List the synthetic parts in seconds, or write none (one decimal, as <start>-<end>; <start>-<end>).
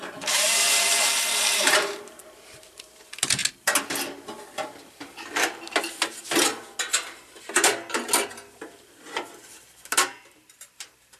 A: 0.0-3.4; 4.9-6.5; 8.5-11.2